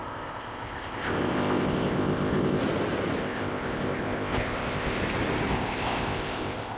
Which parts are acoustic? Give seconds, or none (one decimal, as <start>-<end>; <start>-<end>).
2.6-3.2; 5.0-5.5